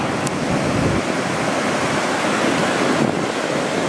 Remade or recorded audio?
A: recorded